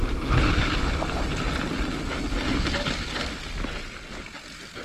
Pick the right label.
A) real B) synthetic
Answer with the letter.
A